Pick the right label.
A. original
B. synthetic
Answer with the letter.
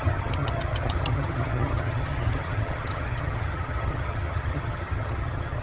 B